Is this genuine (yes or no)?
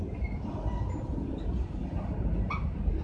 yes